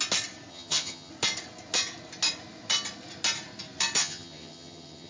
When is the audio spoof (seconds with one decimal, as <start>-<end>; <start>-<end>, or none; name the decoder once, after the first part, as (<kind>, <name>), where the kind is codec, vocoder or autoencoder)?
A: 0.5-1.1 (vocoder, HiFi-GAN); 4.0-5.1